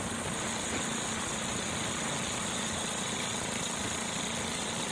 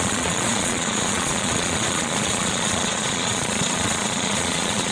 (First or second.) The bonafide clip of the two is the first